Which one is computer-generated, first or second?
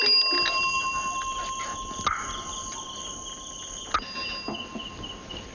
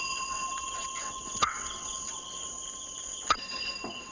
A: second